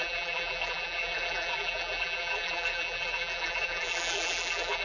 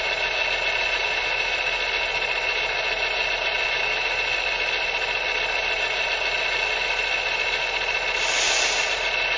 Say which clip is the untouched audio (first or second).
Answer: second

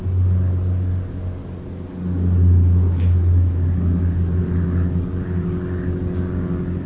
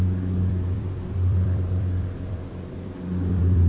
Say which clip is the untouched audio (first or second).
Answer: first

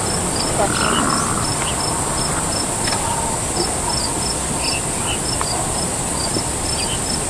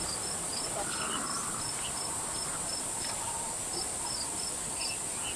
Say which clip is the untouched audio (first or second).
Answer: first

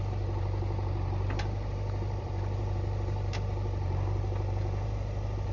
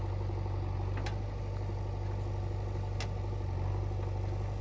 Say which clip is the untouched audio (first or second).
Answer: second